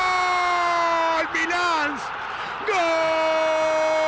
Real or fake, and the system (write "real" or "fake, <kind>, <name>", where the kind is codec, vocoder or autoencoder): real